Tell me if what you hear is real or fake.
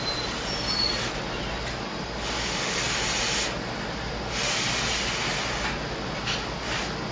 real